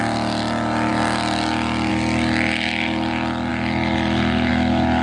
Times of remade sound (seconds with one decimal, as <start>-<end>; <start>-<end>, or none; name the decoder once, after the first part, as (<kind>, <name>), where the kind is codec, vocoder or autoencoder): none